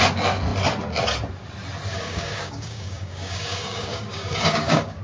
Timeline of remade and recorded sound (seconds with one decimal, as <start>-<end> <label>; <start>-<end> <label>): 0.0-1.9 recorded; 1.9-5.0 remade